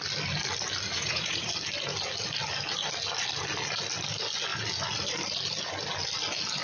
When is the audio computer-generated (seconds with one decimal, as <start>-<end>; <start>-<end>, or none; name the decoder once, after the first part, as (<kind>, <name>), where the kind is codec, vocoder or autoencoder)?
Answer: 0.9-1.5 (vocoder, Vocos)